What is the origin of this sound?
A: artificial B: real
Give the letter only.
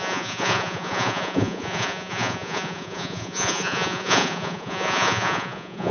A